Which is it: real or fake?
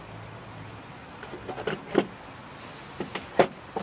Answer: real